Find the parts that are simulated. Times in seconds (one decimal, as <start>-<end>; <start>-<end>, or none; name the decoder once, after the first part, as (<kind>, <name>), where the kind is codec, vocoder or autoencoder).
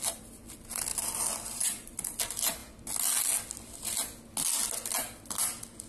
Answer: 0.9-2.2 (vocoder, BigVGAN v2)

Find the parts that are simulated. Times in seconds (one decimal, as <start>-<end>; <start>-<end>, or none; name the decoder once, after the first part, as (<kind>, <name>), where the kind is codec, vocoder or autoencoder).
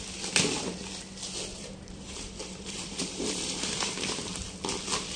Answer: 1.5-4.6 (vocoder, BigVGAN v2)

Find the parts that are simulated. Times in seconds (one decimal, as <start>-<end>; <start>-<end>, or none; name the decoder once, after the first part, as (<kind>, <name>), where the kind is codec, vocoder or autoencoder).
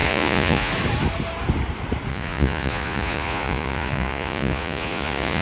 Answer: 0.0-0.7 (vocoder, Vocos); 2.1-5.4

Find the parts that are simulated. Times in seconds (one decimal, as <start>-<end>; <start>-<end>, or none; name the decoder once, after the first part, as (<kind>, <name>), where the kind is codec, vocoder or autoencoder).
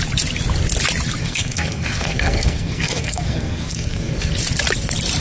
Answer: 1.2-4.3 (codec, SNAC)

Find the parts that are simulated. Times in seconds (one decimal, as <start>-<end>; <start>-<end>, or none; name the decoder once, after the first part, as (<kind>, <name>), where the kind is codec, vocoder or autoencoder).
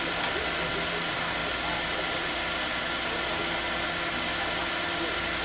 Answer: none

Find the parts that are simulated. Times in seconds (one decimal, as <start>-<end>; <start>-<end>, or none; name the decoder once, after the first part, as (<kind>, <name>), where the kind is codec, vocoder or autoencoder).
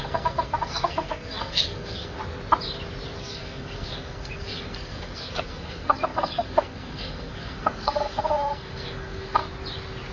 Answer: 0.0-2.2 (codec, SNAC); 3.2-9.4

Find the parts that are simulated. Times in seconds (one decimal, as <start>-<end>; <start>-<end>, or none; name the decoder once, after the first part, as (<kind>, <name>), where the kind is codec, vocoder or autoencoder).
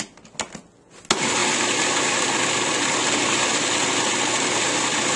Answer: none